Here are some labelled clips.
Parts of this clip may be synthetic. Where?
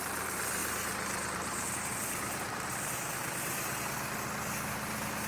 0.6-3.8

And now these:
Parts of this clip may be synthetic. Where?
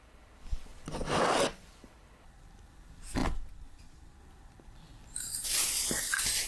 0.0-0.7; 1.3-3.2; 4.2-6.5